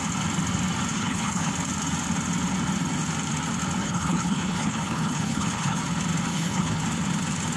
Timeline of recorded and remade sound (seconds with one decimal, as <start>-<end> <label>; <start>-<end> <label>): 0.0-0.9 recorded; 0.9-1.5 remade; 1.5-3.8 recorded; 3.8-5.8 remade; 5.8-6.3 recorded; 6.3-6.8 remade; 6.8-7.6 recorded